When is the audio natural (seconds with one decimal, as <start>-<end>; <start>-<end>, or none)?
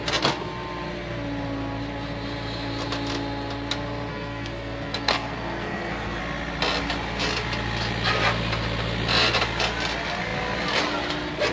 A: 0.0-4.1; 6.2-11.5